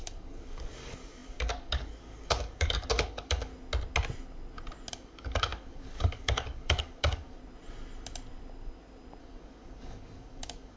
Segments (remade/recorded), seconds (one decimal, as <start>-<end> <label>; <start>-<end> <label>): 0.0-3.5 remade; 3.5-4.9 recorded; 4.9-7.4 remade; 7.4-9.2 recorded; 9.2-10.8 remade